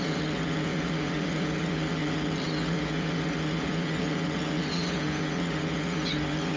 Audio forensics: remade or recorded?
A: remade